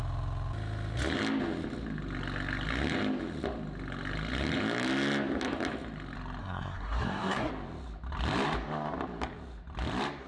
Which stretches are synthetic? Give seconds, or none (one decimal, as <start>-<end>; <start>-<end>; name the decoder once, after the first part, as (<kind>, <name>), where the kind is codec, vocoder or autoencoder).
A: 6.4-7.5 (codec, SNAC)